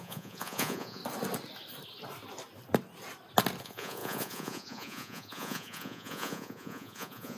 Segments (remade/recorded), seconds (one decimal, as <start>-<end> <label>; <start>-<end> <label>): 0.0-1.0 remade; 1.0-3.6 recorded; 3.6-7.4 remade